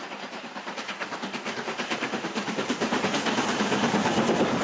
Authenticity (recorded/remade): remade